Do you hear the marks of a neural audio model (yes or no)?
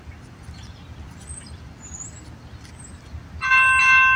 no